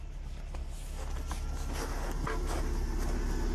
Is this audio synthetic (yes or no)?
no